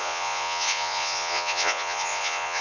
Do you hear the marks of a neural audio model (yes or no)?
yes